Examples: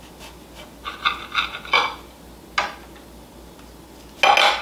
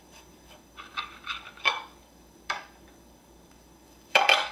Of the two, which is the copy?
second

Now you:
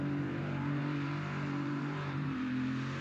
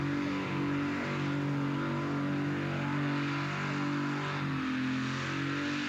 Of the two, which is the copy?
first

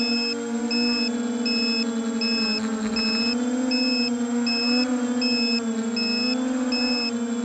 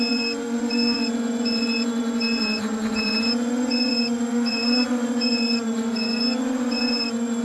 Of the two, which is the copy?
second